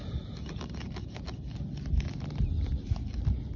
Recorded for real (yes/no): yes